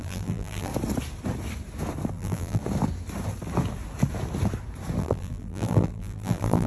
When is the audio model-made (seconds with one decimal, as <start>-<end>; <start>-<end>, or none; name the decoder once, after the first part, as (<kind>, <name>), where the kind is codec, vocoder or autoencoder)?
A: 0.0-0.7 (vocoder, BigVGAN v2); 2.1-2.6; 5.0-6.7

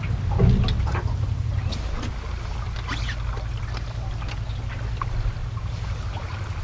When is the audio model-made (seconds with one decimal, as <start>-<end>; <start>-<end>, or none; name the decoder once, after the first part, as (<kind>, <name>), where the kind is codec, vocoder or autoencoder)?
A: 5.4-6.0 (vocoder, BigVGAN v2)

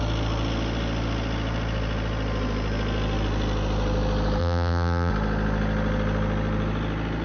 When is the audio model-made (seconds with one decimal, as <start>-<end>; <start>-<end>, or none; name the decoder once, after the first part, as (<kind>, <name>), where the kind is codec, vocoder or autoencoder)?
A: 4.4-5.1 (vocoder, BigVGAN v2)

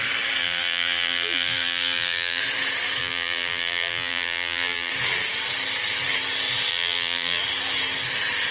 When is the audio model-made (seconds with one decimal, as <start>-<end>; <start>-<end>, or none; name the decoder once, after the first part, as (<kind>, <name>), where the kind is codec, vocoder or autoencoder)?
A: 0.4-2.4 (vocoder, BigVGAN v2); 3.0-4.9; 6.7-7.4

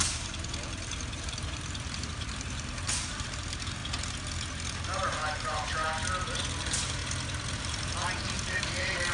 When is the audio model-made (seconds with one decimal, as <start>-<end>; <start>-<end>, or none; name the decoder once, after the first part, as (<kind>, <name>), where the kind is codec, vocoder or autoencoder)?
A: 0.0-3.8 (vocoder, BigVGAN v2); 4.7-5.8; 6.6-7.0; 7.6-9.1

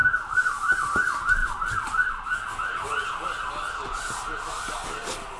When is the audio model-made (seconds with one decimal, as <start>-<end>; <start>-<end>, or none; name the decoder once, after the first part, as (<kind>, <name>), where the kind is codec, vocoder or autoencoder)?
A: 0.0-0.9 (vocoder, BigVGAN v2)